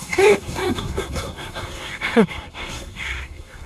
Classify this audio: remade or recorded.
remade